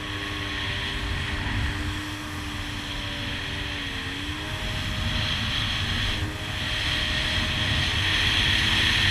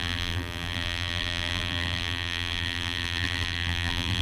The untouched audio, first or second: first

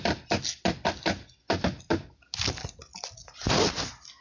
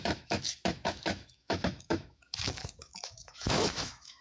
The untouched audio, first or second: first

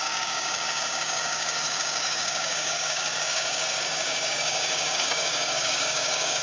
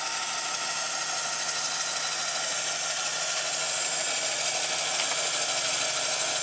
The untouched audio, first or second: second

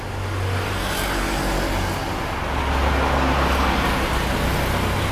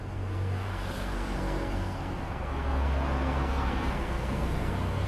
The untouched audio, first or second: first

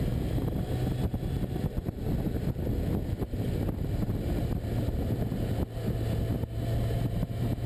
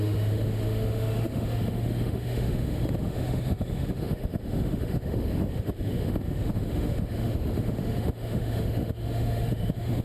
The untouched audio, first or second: first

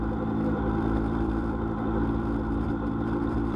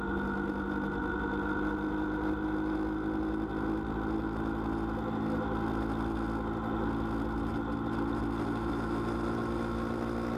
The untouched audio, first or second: second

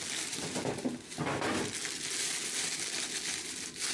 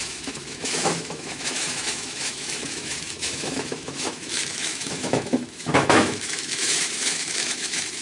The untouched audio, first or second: first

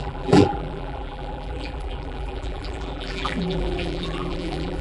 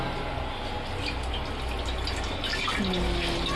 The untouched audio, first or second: second